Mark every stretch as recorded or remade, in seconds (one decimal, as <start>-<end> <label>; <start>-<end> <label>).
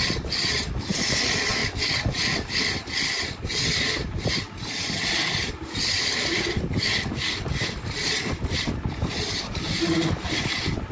0.0-10.9 recorded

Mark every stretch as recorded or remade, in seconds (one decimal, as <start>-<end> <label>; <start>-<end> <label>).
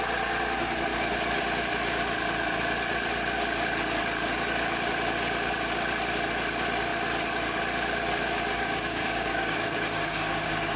0.0-8.5 recorded; 8.5-10.8 remade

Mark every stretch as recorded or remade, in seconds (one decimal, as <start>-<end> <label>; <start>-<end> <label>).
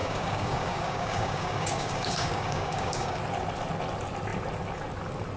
0.0-3.2 remade; 3.2-5.4 recorded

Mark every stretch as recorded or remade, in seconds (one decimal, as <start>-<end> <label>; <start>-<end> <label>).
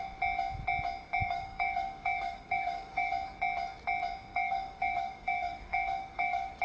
0.0-1.2 recorded; 1.2-3.1 remade; 3.1-4.3 recorded; 4.3-6.6 remade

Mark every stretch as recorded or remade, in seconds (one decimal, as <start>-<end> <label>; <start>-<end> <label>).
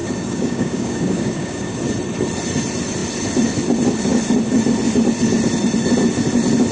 0.0-1.8 remade; 1.8-6.7 recorded